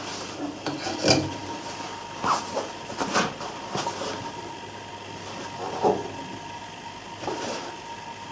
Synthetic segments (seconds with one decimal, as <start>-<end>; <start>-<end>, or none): none